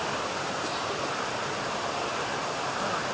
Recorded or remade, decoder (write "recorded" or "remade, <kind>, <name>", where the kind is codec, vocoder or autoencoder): recorded